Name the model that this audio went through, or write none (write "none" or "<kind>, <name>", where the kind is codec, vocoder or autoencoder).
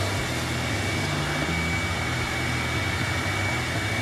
none